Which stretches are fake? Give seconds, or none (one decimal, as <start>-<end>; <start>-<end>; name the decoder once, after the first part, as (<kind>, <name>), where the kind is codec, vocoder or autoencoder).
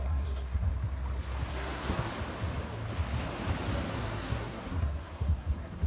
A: 0.0-0.7 (codec, SNAC); 1.5-2.1; 3.9-5.9